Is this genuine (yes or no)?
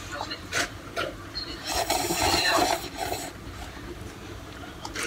no